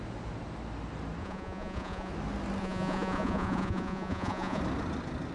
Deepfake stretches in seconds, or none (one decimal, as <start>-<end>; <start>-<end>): 1.2-2.1; 2.6-4.6